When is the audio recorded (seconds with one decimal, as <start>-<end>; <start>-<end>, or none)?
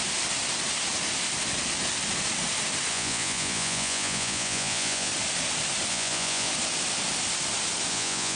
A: 0.0-2.9; 5.1-5.9; 6.5-7.9